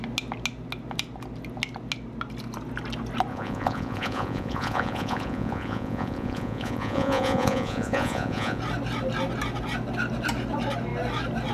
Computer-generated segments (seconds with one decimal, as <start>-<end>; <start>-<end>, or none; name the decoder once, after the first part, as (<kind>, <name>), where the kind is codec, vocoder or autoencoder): 3.3-8.6 (vocoder, Vocos)